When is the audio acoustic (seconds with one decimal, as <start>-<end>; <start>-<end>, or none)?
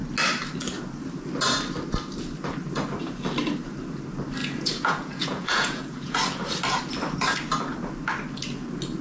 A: 0.0-4.4; 6.2-9.0